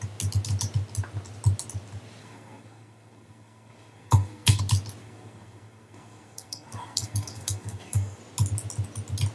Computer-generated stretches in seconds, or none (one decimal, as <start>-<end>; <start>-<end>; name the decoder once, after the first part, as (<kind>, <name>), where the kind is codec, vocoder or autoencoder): 2.2-4.6 (codec, SNAC); 5.0-8.2